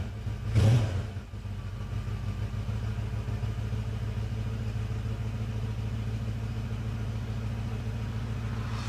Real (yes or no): yes